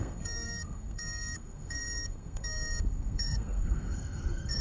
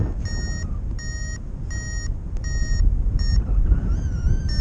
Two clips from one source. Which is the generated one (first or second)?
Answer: first